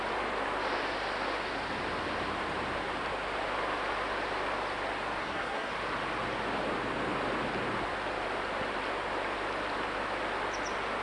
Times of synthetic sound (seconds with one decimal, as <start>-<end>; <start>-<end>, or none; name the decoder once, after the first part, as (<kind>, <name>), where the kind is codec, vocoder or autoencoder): 5.2-5.7 (codec, SNAC)